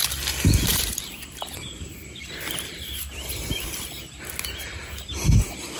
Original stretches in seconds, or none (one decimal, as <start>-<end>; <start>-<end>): 0.0-0.7; 4.2-5.8